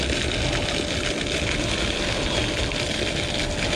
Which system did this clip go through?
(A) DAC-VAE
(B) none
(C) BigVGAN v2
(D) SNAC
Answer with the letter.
B